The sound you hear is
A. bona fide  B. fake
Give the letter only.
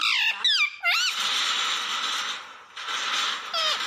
A